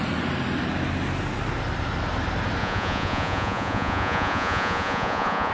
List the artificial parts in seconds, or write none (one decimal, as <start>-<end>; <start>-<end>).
2.6-5.5